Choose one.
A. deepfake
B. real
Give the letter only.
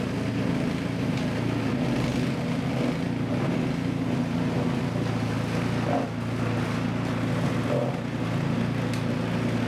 B